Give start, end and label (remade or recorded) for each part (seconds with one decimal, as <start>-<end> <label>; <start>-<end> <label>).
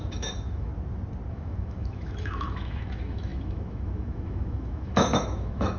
0.0-0.7 remade; 0.7-1.3 recorded; 1.3-5.8 remade